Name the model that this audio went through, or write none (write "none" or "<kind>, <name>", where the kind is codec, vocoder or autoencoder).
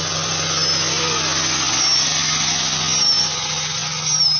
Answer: none